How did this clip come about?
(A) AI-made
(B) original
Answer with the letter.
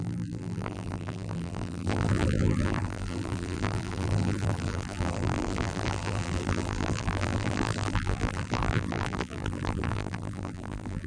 A